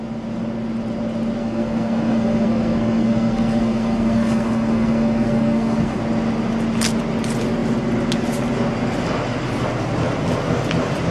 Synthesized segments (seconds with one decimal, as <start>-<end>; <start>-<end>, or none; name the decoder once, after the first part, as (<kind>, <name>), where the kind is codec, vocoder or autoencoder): 1.4-6.0 (codec, SNAC)